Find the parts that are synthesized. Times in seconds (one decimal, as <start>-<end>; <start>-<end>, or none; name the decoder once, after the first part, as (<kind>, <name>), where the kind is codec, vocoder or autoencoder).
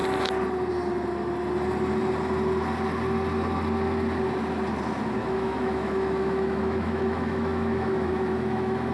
5.2-8.9 (autoencoder, DAC-VAE)